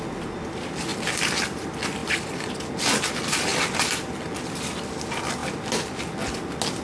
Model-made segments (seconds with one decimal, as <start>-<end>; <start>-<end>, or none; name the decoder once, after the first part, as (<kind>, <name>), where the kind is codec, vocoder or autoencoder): none